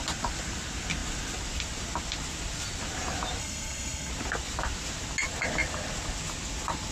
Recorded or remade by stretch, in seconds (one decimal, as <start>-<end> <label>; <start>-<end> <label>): 0.0-3.4 recorded; 3.4-4.1 remade; 4.1-6.9 recorded